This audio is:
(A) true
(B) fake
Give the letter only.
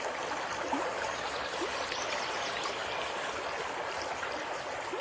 A